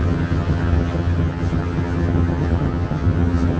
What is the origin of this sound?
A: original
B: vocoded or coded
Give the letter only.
B